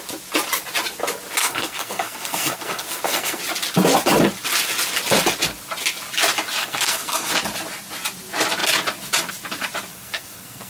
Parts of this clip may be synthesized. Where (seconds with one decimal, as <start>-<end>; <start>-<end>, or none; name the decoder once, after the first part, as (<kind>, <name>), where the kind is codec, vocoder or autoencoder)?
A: 1.4-3.4 (codec, SNAC); 6.6-7.3; 9.9-10.7